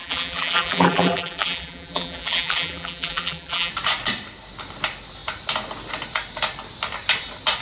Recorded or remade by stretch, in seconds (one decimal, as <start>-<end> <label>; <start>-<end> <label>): 0.0-3.7 remade; 3.7-7.6 recorded